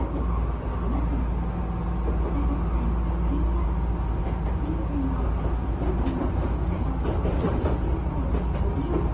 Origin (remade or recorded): recorded